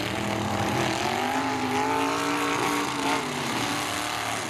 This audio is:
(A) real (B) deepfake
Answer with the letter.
A